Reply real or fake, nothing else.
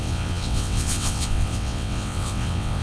fake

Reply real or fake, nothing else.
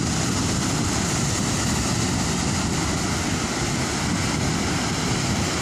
real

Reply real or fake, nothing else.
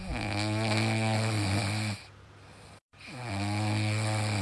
real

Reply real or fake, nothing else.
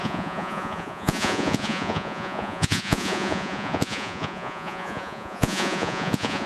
fake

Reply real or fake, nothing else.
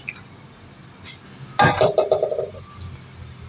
real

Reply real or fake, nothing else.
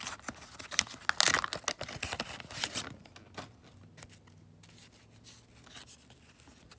real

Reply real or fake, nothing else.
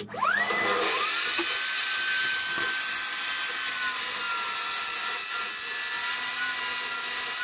real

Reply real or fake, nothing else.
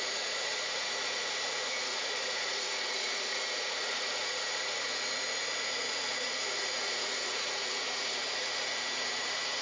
fake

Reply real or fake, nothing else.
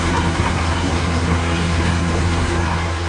fake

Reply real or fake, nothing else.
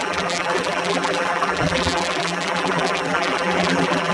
fake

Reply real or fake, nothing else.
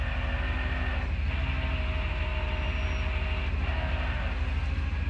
real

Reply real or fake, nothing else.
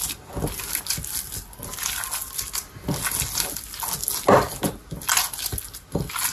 real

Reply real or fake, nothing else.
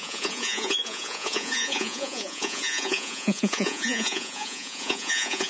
fake